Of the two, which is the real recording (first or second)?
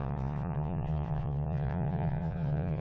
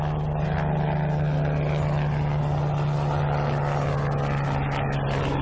second